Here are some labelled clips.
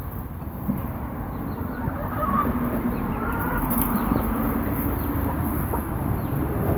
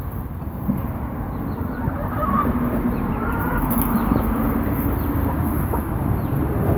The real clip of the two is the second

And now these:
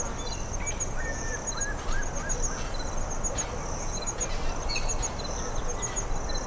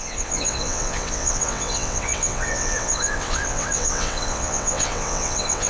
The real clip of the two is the first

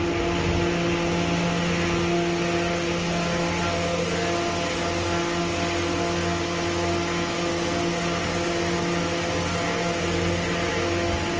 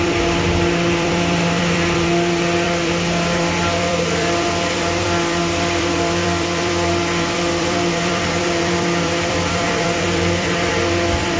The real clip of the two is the first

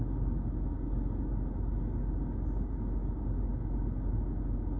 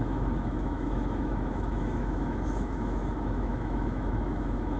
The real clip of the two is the first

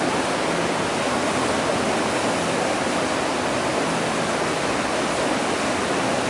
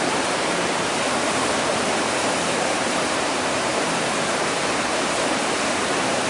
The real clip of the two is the first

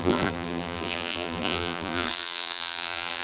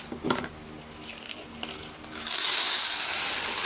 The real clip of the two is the second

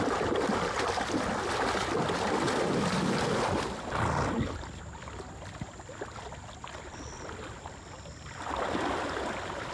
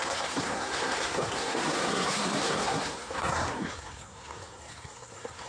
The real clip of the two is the first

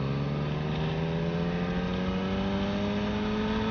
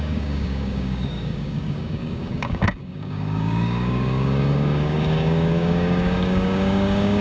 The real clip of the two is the first